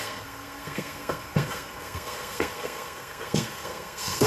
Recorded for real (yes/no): no